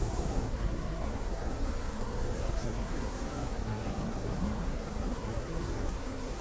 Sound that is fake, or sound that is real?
fake